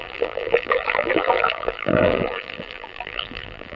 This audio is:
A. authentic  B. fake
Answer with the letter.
B